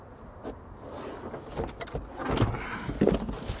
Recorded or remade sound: recorded